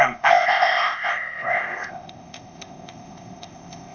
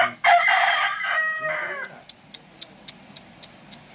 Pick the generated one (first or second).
first